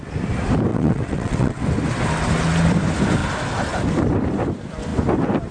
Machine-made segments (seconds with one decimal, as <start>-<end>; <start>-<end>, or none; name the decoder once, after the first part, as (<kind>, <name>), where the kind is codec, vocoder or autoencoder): 0.7-1.6 (vocoder, WaveNeXt)